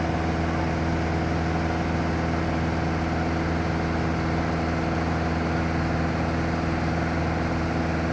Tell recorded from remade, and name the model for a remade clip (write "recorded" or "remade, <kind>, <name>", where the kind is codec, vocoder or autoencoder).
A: recorded